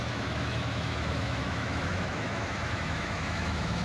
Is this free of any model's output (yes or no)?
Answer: no